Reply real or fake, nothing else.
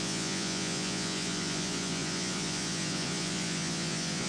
fake